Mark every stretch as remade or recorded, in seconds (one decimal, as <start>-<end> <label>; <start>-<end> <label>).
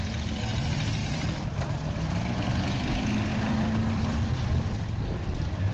0.0-1.0 recorded; 1.0-2.2 remade; 2.2-3.3 recorded; 3.3-4.3 remade; 4.3-5.7 recorded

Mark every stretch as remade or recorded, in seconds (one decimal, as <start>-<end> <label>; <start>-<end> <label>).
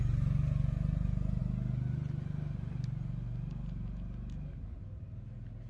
0.0-5.7 recorded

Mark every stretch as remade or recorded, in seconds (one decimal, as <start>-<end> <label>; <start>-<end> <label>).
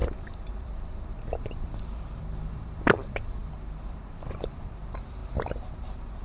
0.0-5.2 remade; 5.2-5.8 recorded; 5.8-6.2 remade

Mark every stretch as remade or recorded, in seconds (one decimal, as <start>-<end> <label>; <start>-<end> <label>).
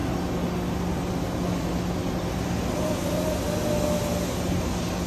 0.0-5.1 recorded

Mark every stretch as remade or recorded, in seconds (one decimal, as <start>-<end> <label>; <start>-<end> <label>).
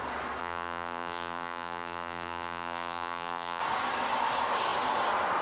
0.0-0.4 recorded; 0.4-3.6 remade; 3.6-5.4 recorded